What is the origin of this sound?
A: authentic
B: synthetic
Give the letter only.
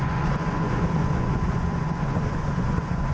B